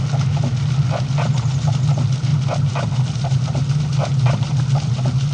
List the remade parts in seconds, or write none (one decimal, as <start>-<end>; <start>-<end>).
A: none